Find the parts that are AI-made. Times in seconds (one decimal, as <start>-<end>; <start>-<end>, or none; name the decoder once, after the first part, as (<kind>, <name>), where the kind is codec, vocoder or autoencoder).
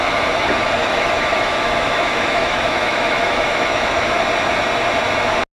0.8-4.2 (autoencoder, DAC-VAE)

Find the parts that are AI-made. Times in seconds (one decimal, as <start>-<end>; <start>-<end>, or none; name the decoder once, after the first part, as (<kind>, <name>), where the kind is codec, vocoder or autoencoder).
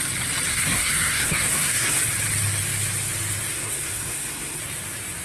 0.5-2.0 (codec, SNAC); 3.5-4.6